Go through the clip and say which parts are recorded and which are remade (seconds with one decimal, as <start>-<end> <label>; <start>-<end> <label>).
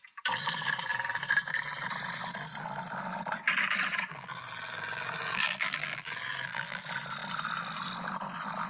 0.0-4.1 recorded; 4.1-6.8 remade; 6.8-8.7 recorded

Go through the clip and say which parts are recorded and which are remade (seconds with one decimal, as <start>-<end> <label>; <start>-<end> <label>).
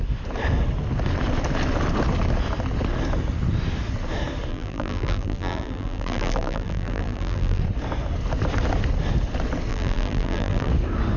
0.0-4.5 recorded; 4.5-7.6 remade; 7.6-9.7 recorded; 9.7-10.7 remade; 10.7-11.2 recorded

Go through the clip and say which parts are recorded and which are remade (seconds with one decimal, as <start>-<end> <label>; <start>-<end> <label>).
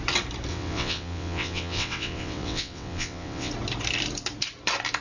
0.0-0.5 recorded; 0.5-3.5 remade; 3.5-5.0 recorded